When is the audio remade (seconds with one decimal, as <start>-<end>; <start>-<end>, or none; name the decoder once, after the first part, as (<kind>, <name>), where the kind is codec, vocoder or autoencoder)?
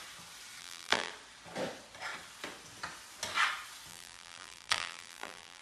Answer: 0.6-1.1 (vocoder, BigVGAN v2); 3.9-5.6